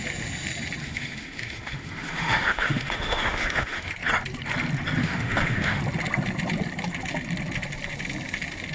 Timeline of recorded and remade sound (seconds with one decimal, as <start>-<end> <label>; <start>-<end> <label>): 0.0-0.8 recorded; 0.8-3.9 remade; 3.9-5.0 recorded; 5.0-5.8 remade; 5.8-8.7 recorded